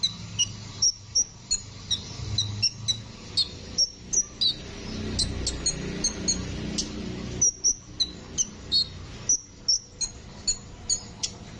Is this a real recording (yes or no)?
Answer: yes